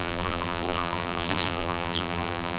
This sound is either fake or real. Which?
fake